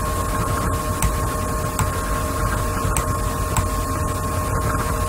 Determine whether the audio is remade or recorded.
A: recorded